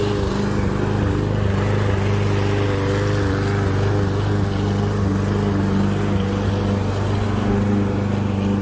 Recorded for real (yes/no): yes